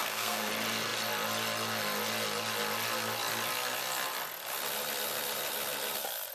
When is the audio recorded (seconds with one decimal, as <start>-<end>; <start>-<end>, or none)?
0.5-6.3